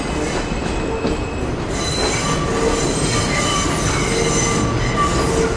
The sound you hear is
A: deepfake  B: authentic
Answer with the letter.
B